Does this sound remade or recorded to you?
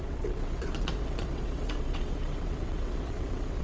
remade